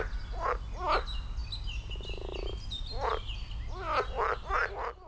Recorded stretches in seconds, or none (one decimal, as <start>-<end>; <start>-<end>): 0.0-5.1

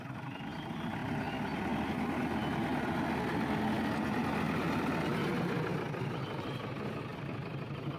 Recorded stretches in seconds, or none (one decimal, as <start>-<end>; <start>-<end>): 0.0-1.0; 1.6-8.0